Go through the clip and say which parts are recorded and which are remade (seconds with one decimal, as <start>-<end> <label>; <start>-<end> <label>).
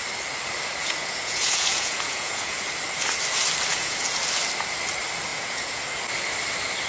0.0-0.8 recorded; 0.8-2.7 remade; 2.7-3.7 recorded; 3.7-4.2 remade; 4.2-5.3 recorded; 5.3-5.8 remade; 5.8-6.9 recorded